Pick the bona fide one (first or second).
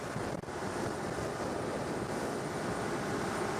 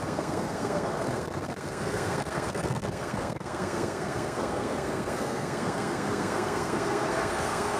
first